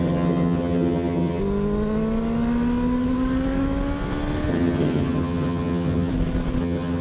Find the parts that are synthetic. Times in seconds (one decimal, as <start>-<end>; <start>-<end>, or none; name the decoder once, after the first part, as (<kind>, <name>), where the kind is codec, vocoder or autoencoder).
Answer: 0.0-1.4 (vocoder, HiFi-GAN); 4.5-6.1; 6.6-7.0